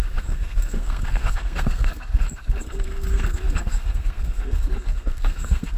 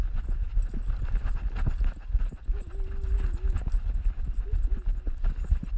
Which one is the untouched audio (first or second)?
second